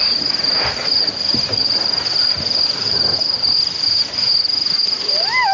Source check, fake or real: real